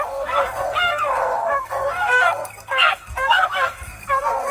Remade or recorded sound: remade